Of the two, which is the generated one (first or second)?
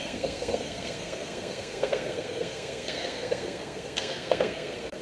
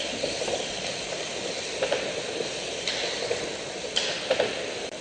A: first